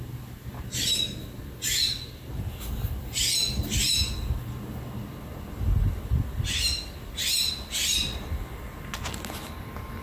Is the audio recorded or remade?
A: recorded